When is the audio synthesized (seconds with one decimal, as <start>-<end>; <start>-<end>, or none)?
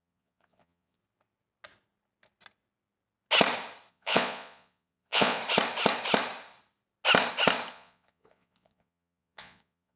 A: 0.0-1.0; 3.9-5.4; 7.7-10.0